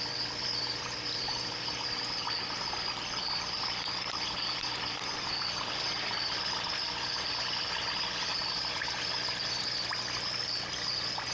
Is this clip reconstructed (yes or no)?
no